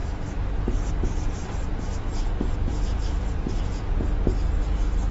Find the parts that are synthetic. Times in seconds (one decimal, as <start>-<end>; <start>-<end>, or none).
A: 2.6-4.1